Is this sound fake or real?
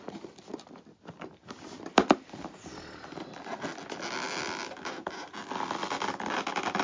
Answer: real